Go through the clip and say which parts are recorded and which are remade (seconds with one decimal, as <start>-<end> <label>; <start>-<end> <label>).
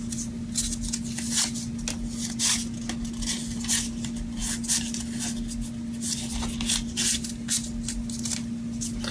0.0-9.1 recorded